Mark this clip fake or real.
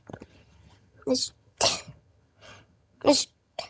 fake